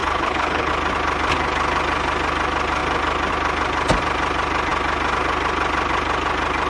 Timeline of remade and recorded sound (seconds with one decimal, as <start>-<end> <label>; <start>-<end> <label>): 0.0-0.7 remade; 0.7-6.7 recorded